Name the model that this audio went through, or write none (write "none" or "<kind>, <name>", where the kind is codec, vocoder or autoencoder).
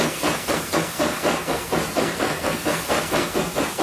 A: codec, SNAC